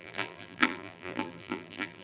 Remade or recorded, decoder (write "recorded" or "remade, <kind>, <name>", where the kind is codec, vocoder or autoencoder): remade, vocoder, BigVGAN v2